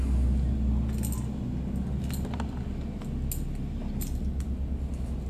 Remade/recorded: recorded